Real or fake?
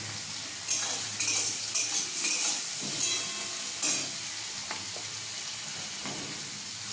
real